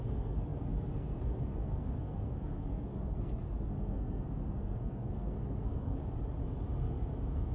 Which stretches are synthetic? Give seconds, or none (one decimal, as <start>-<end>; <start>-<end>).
0.0-6.0; 6.8-7.5